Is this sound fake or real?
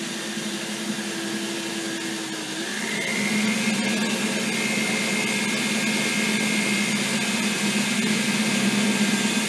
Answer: real